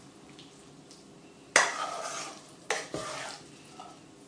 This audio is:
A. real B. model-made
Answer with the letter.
A